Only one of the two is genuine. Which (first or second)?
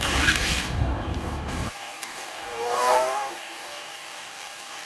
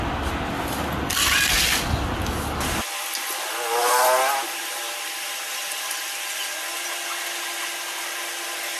second